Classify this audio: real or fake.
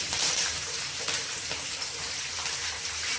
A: fake